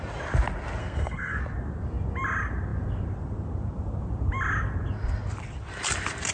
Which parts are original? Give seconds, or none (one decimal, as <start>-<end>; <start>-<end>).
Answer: 0.0-0.8; 1.4-6.3